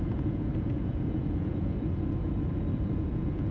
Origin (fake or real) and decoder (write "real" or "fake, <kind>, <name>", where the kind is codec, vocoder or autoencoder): fake, vocoder, Vocos